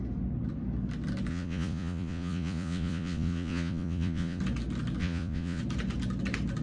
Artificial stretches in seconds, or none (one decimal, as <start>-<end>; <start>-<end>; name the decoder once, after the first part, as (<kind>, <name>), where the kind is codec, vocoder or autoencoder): 1.3-4.4 (vocoder, Vocos); 5.0-5.6